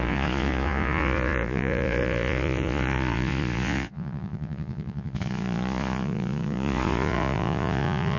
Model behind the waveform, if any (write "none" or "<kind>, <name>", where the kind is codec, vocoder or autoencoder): vocoder, Vocos